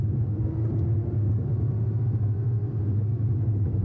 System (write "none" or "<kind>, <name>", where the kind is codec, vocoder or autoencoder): none